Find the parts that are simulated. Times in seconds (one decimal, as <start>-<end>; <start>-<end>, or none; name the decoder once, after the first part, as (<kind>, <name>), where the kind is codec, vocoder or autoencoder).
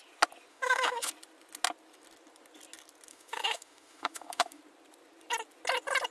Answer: 0.5-1.1 (autoencoder, DAC-VAE); 3.1-4.6